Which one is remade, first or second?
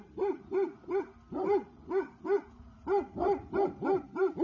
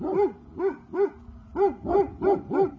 first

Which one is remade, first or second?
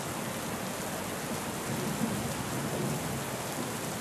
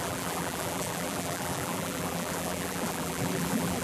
second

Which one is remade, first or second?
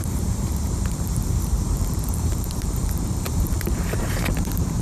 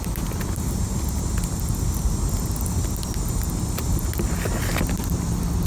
first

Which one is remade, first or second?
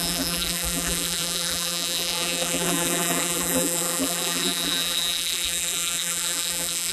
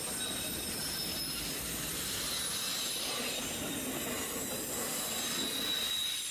first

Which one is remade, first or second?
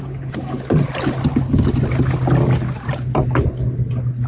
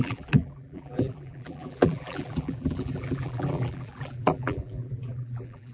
second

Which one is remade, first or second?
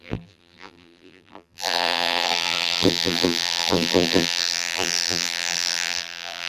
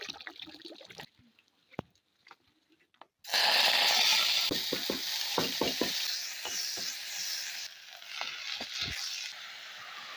first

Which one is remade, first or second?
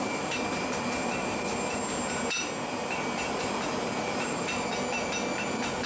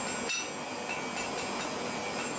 first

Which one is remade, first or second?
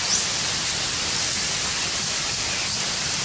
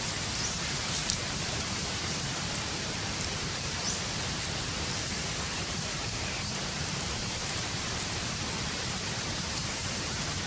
second